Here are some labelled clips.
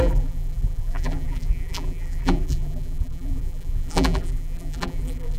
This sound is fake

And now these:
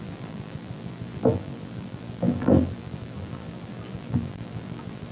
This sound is fake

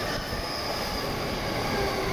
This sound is real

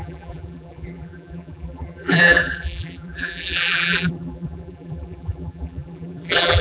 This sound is fake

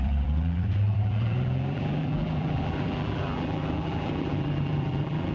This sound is fake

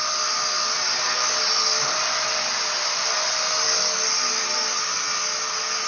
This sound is real